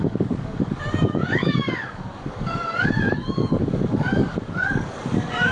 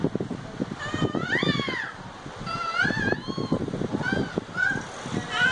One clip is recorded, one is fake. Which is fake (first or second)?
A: first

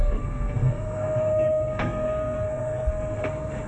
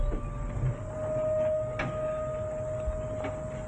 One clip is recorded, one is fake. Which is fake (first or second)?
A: first